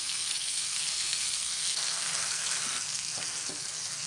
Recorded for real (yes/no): no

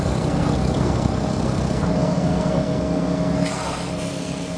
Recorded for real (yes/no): no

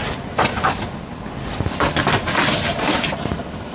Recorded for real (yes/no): yes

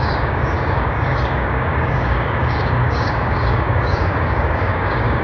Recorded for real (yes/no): no